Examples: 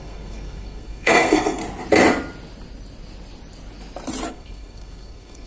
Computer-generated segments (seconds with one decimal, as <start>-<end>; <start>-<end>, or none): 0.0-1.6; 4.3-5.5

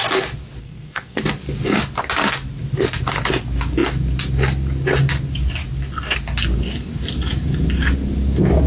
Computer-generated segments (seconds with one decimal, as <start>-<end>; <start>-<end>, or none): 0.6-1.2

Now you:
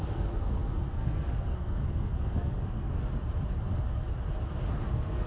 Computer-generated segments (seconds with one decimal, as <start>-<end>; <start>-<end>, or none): 0.0-3.1; 4.7-5.3

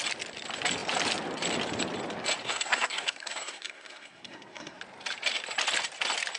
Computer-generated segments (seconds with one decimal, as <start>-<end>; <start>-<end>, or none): 2.4-4.8

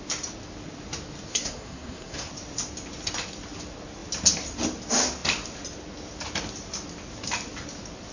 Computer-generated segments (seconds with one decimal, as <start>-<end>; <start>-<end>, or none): 1.3-2.3

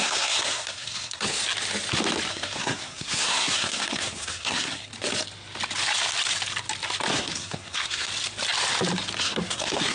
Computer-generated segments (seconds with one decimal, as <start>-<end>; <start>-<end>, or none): 0.0-1.4; 2.3-4.9; 7.1-8.1; 9.2-9.9